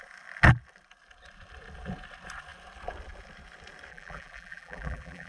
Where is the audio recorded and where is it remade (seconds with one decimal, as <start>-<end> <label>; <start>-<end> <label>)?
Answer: 0.0-3.9 recorded; 3.9-5.3 remade